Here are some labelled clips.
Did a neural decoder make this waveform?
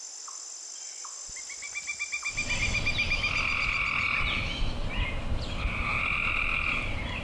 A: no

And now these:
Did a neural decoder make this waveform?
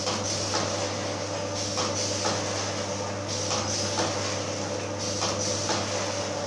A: no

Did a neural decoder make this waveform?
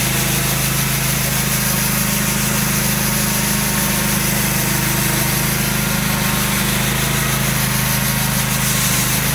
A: no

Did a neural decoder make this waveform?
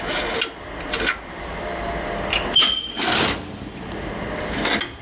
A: no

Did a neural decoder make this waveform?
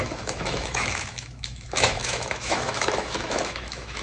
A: yes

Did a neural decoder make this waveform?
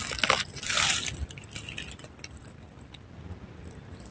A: no